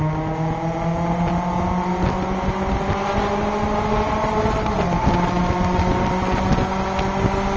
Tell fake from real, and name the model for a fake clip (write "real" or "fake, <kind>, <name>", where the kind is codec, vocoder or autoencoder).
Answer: real